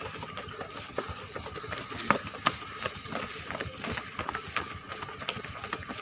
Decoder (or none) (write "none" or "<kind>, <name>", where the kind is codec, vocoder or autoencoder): none